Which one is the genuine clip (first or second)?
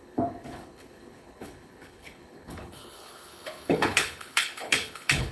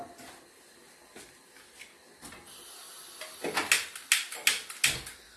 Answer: second